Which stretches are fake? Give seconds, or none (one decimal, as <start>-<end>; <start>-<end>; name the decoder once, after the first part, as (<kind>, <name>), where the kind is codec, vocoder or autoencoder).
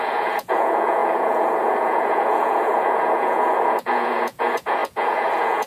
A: 0.0-5.7 (vocoder, Vocos)